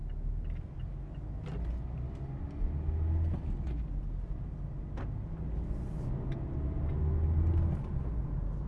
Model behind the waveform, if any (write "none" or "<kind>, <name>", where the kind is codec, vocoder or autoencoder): none